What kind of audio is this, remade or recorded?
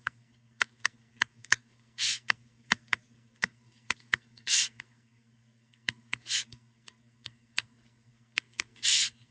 remade